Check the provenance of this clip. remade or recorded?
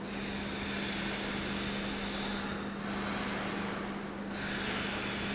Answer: recorded